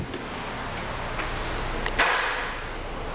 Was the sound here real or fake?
real